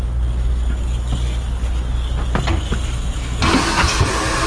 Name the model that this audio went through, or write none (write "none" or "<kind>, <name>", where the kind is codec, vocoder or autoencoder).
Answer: none